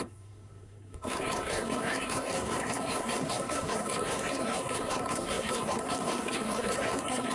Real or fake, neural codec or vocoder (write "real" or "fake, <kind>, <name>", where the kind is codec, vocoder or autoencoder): fake, codec, SNAC